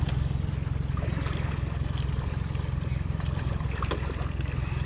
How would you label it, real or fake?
real